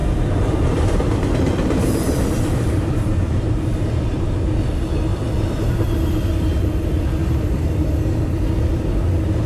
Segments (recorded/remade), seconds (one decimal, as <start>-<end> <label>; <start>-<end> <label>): 0.0-4.2 remade; 4.2-5.1 recorded; 5.1-5.7 remade; 5.7-9.5 recorded